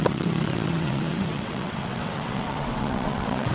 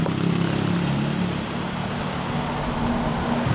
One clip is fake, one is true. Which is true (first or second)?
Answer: second